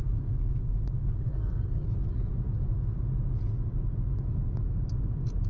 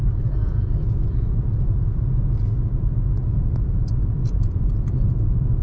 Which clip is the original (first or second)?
first